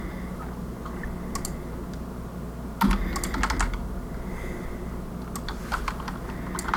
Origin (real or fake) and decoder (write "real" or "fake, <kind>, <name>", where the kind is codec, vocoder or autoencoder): real